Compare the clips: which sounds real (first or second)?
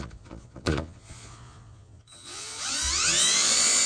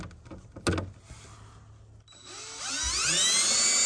second